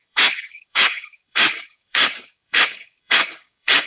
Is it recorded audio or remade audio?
remade